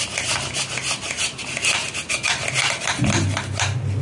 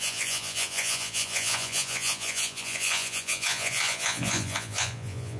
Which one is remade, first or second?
second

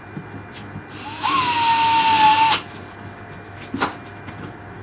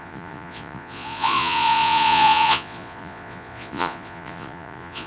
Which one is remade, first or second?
second